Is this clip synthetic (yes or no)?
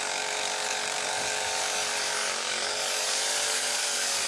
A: yes